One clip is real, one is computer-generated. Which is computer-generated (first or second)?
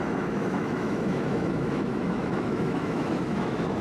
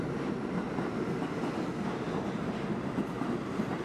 first